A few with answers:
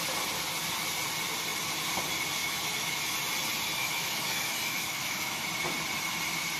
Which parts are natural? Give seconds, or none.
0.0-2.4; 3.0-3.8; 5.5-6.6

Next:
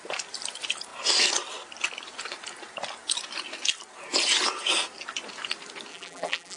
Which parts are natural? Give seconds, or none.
0.0-5.9